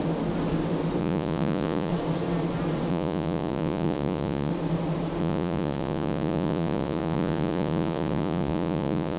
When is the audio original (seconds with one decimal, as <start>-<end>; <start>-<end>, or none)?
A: 0.0-1.0; 1.9-2.9; 4.5-5.2